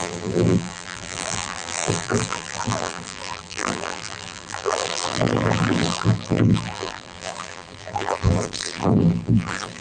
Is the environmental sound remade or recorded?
remade